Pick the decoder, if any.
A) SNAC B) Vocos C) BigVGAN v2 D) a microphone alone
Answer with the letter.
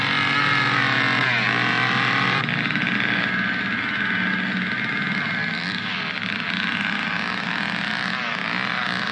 D